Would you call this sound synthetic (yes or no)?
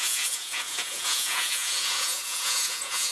yes